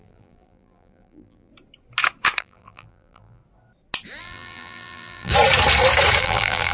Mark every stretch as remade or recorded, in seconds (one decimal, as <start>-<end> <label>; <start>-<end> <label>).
0.0-1.5 remade; 1.5-2.4 recorded; 2.4-3.4 remade; 3.4-4.2 recorded; 4.2-5.3 remade; 5.3-6.2 recorded; 6.2-6.7 remade